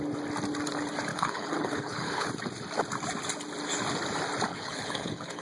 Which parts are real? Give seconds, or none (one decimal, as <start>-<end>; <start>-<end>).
0.0-1.1; 2.3-4.5

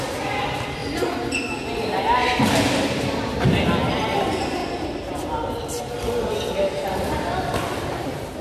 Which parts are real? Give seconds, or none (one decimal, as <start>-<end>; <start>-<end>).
0.8-2.4; 4.6-6.5